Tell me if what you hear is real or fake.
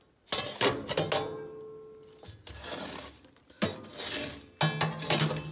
real